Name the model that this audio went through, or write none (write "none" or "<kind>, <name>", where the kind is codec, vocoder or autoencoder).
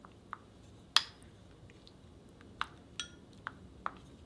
none